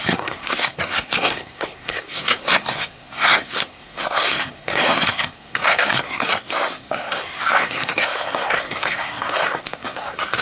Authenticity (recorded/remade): remade